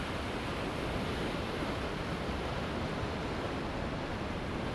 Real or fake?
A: real